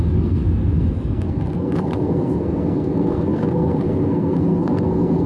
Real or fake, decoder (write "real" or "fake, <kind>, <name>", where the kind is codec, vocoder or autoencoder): fake, codec, SNAC